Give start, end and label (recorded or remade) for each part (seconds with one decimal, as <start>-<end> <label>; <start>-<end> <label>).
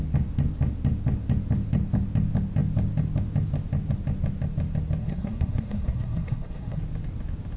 0.0-5.0 recorded; 5.0-6.8 remade; 6.8-7.6 recorded